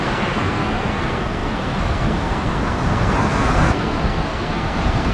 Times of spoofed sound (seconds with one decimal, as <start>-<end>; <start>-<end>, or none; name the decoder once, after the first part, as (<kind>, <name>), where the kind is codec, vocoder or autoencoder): 0.0-5.1 (codec, SNAC)